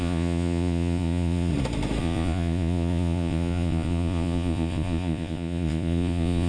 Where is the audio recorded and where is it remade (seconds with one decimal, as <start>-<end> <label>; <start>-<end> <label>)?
0.0-1.5 remade; 1.5-2.0 recorded; 2.0-6.5 remade